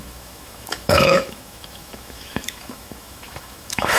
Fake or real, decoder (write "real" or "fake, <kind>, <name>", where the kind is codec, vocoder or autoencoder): fake, autoencoder, DAC-VAE